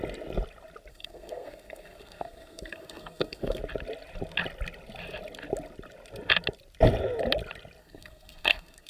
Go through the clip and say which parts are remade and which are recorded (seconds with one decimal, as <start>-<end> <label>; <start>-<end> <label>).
0.0-0.9 recorded; 0.9-3.6 remade; 3.6-7.8 recorded; 7.8-8.9 remade